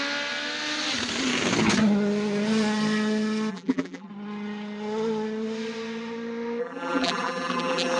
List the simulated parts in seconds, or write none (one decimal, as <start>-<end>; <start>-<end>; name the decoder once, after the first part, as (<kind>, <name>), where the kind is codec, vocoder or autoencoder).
3.5-4.1 (vocoder, BigVGAN v2); 6.6-8.0

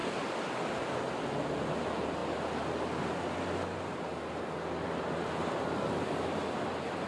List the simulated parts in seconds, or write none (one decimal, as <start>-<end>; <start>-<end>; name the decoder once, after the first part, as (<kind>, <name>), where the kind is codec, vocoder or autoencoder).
none

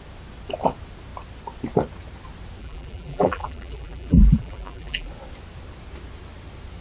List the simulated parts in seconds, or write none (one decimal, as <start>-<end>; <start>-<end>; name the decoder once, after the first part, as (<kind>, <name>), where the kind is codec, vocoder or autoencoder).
2.6-5.1 (vocoder, BigVGAN v2)